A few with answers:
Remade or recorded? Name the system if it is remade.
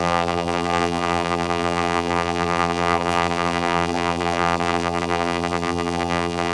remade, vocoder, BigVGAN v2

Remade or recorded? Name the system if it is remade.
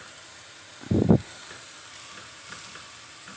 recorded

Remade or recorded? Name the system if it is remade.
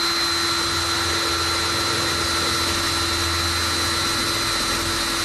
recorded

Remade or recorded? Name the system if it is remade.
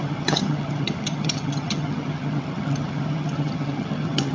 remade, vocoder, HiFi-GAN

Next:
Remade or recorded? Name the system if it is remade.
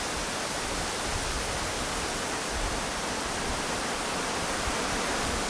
recorded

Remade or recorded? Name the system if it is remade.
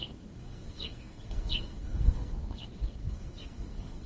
remade, codec, SNAC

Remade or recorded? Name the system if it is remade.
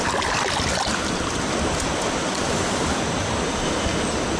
recorded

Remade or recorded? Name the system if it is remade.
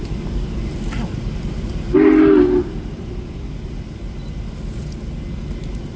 recorded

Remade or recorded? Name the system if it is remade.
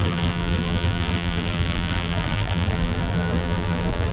remade, vocoder, BigVGAN v2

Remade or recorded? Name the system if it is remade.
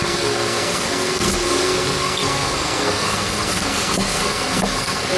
remade, codec, SNAC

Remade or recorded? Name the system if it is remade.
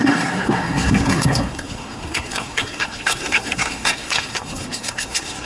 remade, codec, SNAC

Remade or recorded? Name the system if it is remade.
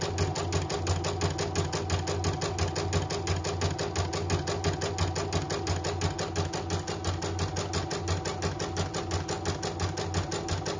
recorded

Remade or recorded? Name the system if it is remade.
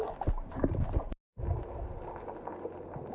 recorded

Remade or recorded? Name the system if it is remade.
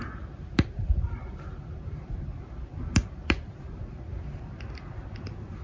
recorded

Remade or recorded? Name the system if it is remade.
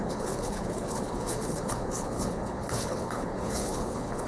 remade, codec, HILCodec